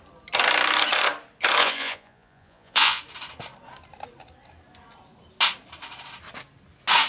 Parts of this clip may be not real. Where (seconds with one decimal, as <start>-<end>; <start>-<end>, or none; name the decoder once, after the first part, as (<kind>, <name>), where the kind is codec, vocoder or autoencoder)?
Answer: 1.6-3.0 (vocoder, Vocos)